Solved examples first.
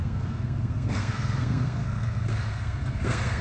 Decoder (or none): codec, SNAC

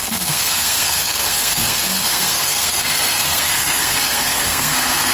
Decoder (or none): codec, SNAC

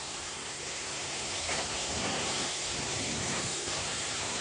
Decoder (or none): codec, SNAC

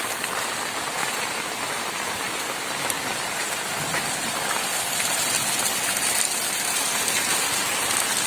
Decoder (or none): none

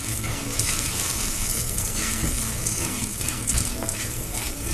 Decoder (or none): codec, SNAC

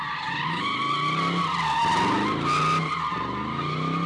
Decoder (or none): none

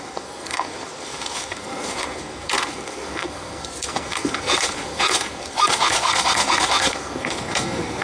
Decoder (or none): codec, SNAC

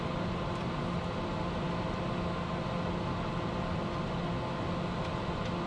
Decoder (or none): none